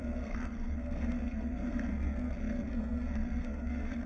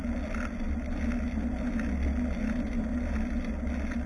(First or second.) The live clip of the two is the second